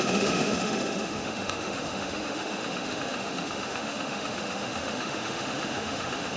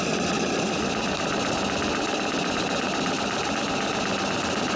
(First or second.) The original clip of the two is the second